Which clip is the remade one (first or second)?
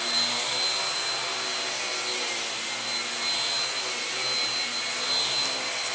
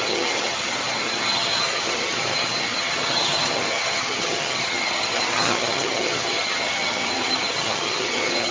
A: second